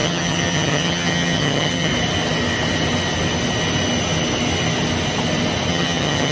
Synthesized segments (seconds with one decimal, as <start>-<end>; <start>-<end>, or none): 0.0-1.9; 5.7-6.3